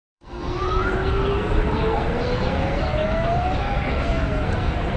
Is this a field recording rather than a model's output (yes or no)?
no